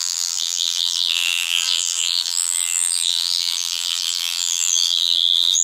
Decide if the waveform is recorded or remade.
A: remade